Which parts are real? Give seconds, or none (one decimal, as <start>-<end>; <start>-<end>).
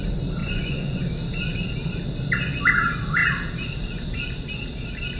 0.0-0.4; 1.0-5.2